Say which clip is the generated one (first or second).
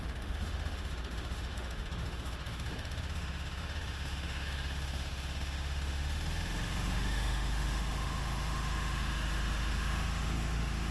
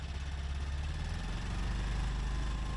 first